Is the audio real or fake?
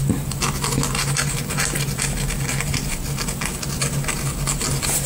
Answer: real